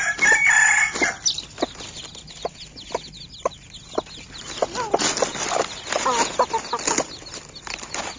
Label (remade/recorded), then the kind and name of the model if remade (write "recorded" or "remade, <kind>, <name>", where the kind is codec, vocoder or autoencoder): recorded